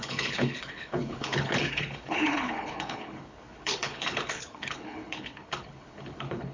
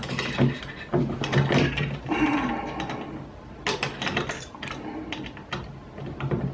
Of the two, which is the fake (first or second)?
first